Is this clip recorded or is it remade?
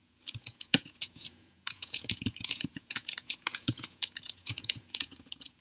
remade